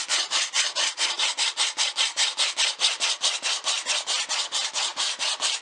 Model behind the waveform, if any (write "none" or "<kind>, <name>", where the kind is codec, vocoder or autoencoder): none